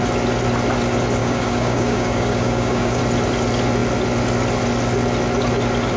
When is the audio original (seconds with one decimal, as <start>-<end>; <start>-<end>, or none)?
0.0-1.2; 3.0-6.0